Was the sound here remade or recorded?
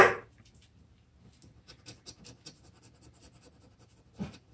recorded